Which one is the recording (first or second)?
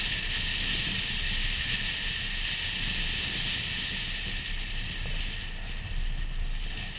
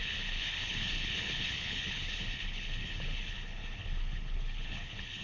first